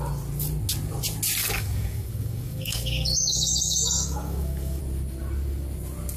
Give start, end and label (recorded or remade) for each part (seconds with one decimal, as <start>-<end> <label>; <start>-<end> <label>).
0.0-1.4 recorded; 1.4-4.8 remade; 4.8-6.2 recorded